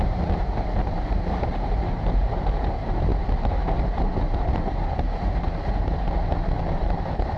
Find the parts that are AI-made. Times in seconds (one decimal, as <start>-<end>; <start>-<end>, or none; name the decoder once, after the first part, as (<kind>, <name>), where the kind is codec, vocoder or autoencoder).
0.0-3.1 (vocoder, BigVGAN v2); 6.6-7.4